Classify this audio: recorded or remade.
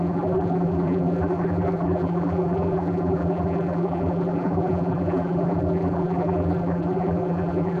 remade